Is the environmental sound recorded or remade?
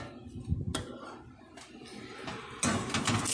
recorded